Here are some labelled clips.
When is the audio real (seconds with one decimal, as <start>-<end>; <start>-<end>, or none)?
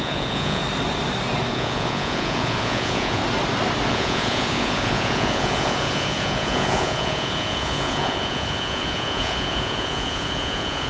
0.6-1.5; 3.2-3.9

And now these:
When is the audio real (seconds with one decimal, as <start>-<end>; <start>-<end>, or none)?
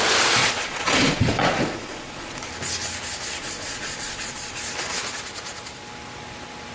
0.0-0.4; 2.5-3.4; 4.6-6.7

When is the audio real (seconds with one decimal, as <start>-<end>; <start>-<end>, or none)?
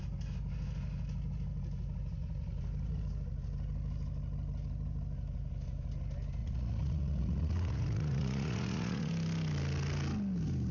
0.0-6.4; 9.1-10.7